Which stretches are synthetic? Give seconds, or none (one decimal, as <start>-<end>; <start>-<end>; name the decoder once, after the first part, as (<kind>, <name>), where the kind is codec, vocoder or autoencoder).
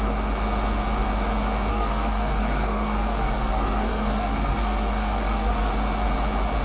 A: 1.7-5.7 (codec, SNAC)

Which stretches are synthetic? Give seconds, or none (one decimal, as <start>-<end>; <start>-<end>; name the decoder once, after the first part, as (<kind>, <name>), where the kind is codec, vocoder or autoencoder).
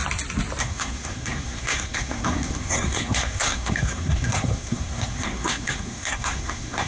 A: 0.6-6.9 (codec, SNAC)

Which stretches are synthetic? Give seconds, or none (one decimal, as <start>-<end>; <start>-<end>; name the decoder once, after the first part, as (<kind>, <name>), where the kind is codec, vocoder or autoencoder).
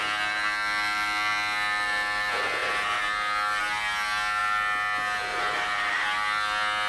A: none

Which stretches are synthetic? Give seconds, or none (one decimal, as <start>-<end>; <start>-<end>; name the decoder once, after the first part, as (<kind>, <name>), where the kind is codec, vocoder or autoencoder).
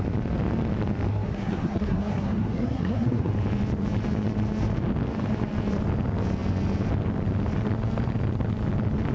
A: 1.1-3.3 (codec, SNAC)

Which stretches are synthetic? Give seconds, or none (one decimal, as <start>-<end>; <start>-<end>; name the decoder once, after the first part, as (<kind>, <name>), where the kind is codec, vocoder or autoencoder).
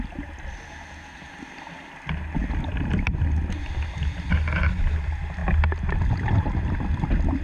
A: none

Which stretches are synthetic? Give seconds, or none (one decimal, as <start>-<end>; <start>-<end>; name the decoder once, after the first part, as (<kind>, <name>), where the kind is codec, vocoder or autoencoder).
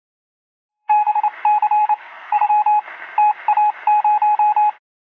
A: 0.7-1.2 (codec, SNAC); 1.8-2.5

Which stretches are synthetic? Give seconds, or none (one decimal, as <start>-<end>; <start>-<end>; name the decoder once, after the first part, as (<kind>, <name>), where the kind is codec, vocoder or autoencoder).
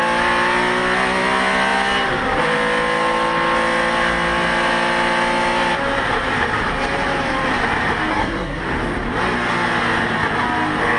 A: 8.1-8.6 (codec, SNAC)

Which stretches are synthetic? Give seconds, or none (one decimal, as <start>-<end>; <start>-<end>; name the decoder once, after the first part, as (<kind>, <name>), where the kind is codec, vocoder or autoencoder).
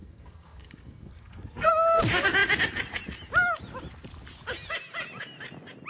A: 0.0-1.7 (codec, SNAC)